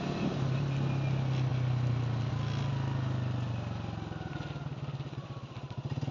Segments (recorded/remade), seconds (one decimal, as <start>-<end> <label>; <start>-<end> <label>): 0.0-6.1 recorded